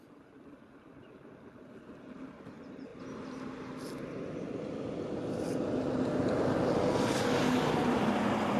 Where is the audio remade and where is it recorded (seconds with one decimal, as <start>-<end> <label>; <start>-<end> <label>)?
0.0-8.6 recorded